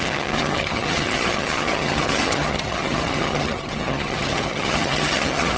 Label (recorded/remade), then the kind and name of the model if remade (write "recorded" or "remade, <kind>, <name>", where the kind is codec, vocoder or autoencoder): remade, vocoder, HiFi-GAN